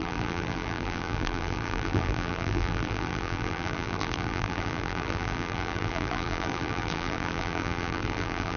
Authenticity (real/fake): fake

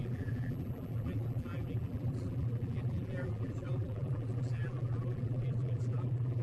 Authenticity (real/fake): fake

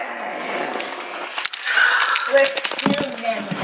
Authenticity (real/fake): real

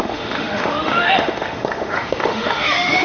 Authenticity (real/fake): fake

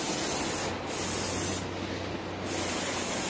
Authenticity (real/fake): real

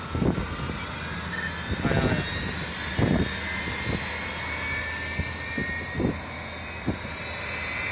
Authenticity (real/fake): real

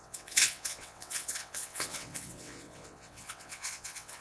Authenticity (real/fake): fake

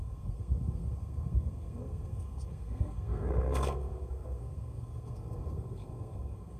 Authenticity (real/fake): fake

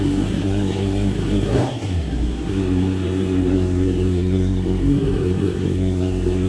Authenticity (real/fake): fake